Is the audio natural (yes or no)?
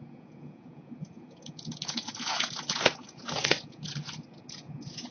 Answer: no